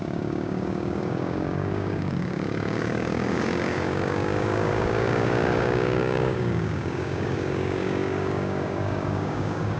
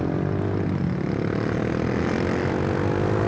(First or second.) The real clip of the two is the second